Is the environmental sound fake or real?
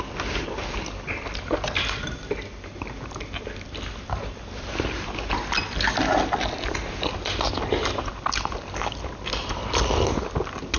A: real